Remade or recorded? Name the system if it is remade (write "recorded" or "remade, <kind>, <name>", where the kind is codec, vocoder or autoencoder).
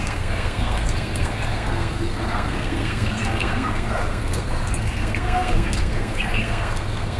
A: remade, codec, SNAC